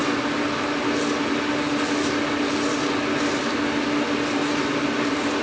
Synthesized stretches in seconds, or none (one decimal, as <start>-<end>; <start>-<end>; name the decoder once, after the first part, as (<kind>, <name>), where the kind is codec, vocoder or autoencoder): none